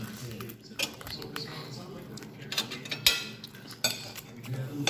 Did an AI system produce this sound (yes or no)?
no